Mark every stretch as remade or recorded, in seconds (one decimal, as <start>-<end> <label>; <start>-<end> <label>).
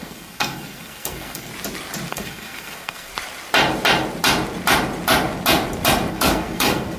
0.0-1.5 remade; 1.5-2.1 recorded; 2.1-3.1 remade; 3.1-6.1 recorded; 6.1-7.0 remade